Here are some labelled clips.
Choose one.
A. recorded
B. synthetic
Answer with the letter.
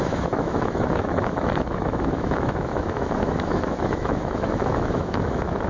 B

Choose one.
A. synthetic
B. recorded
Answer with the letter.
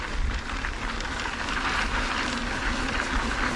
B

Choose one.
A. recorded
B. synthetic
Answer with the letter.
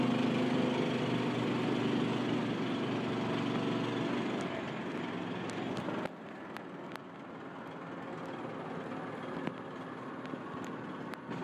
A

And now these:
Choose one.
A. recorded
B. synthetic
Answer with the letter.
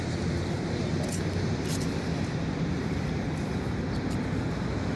A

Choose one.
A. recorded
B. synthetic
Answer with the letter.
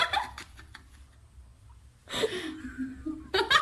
A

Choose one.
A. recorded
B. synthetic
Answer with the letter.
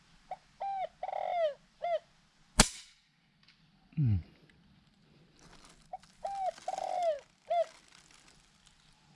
A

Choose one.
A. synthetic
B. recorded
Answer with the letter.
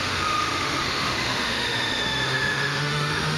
A